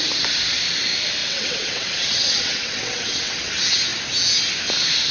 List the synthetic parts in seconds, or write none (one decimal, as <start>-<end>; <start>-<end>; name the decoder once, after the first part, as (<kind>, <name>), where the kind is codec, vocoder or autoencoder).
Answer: 1.2-3.5 (vocoder, WaveNeXt)